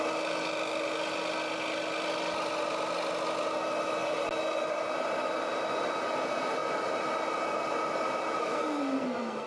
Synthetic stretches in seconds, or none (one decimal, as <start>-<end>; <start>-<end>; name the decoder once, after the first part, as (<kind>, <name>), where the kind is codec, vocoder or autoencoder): 8.4-9.5 (codec, SNAC)